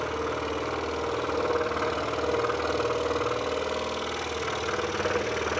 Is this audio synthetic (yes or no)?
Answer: no